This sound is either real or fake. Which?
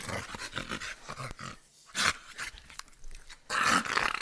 real